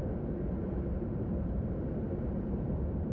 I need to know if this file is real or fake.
fake